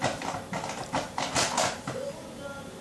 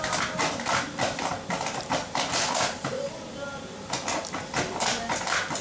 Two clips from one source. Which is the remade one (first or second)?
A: second